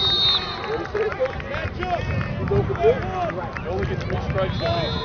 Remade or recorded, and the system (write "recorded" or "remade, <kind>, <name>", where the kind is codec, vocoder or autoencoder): recorded